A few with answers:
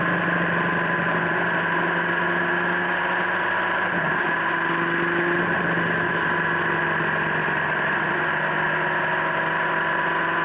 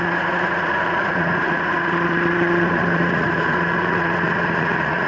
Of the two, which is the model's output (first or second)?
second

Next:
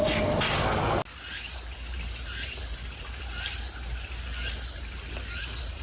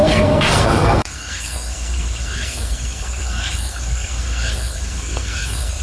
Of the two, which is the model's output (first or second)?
second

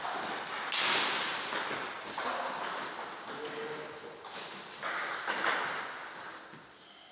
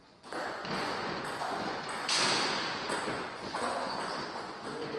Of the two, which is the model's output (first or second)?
second